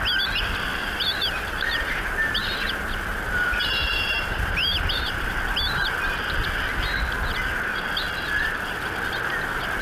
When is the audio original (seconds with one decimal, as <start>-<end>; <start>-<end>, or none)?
0.0-0.7; 5.4-9.8